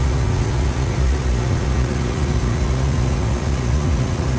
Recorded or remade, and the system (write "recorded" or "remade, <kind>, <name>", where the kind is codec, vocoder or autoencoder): remade, vocoder, Vocos